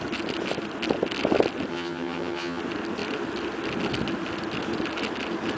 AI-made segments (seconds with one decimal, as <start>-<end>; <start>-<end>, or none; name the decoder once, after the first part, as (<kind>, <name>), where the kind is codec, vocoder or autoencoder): 1.7-2.6 (vocoder, HiFi-GAN)